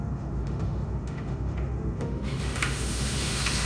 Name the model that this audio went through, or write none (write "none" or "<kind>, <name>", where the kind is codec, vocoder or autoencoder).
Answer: autoencoder, DAC-VAE